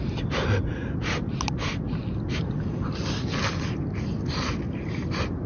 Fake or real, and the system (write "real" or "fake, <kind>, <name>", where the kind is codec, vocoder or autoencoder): real